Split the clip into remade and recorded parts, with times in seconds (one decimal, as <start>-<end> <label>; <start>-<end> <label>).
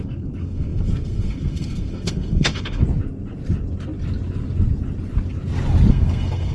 0.0-2.8 remade; 2.8-5.9 recorded; 5.9-6.5 remade